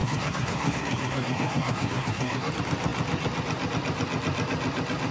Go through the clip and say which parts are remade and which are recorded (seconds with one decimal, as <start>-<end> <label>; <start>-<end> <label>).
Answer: 0.0-2.5 remade; 2.5-5.1 recorded